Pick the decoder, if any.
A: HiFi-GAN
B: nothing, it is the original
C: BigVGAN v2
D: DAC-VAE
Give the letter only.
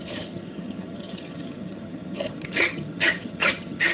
A